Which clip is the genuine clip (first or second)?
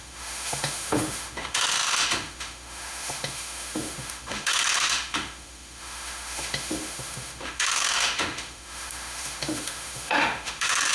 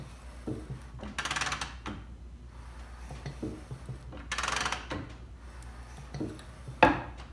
second